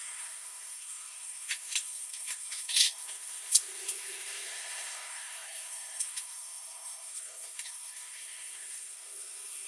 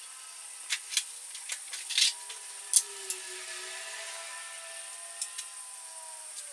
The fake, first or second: first